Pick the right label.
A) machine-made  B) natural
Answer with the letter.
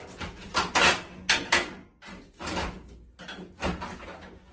B